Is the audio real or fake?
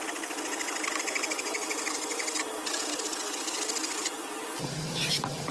real